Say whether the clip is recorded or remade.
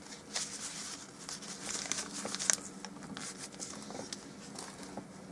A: recorded